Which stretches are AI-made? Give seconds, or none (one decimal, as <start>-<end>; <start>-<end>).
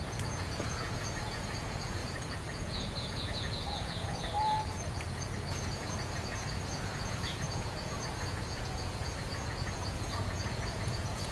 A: 0.0-11.3